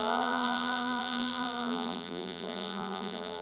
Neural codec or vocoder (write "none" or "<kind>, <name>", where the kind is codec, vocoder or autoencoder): vocoder, BigVGAN v2